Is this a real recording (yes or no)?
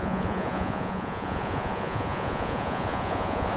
no